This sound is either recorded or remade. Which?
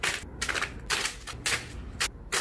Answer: recorded